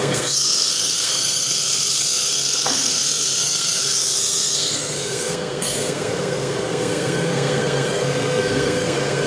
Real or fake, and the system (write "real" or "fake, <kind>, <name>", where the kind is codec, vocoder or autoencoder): fake, codec, SNAC